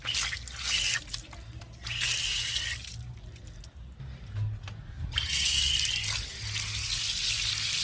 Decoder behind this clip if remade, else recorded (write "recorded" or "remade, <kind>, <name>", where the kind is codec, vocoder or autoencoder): recorded